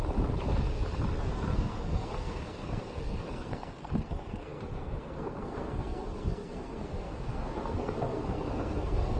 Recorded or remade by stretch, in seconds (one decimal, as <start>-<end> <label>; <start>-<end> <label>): 0.0-1.2 recorded; 1.2-9.2 remade